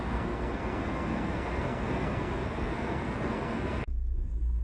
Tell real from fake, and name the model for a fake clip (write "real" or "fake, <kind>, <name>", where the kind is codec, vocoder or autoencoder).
fake, codec, SNAC